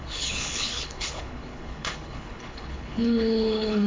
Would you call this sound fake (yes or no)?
yes